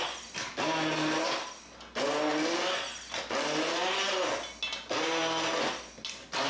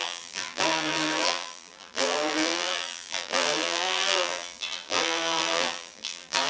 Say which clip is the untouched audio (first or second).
first